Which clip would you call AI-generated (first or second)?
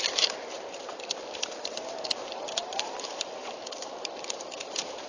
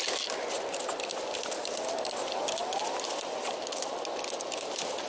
first